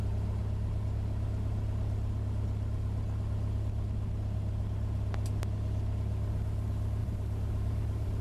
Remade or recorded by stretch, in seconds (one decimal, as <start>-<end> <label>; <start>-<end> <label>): 0.0-7.0 recorded; 7.0-8.2 remade